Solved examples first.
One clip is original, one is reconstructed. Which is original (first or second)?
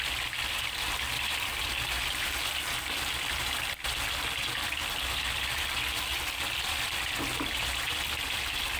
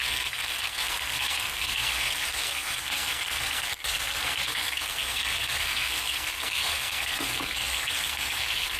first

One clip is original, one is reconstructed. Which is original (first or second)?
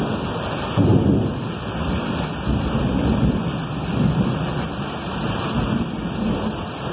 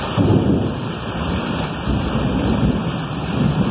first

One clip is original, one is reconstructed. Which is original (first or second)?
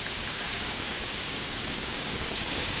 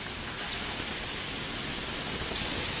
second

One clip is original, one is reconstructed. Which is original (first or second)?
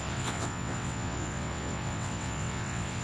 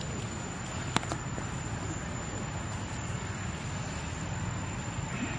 second